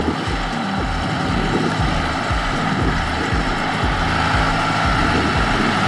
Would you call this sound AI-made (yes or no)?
no